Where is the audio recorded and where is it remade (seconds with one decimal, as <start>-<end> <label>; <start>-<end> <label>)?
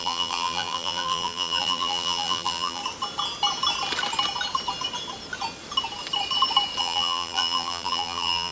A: 0.0-2.8 remade; 2.8-6.8 recorded; 6.8-8.5 remade